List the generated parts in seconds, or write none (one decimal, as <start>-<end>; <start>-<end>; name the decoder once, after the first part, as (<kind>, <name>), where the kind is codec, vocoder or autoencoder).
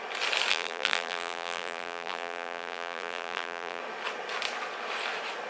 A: 0.5-3.8 (vocoder, BigVGAN v2)